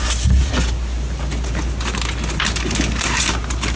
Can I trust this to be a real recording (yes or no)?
yes